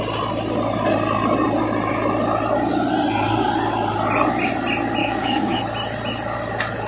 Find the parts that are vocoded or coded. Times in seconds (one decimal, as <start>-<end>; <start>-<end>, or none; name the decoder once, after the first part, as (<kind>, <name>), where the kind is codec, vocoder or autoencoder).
5.0-5.6 (codec, DAC)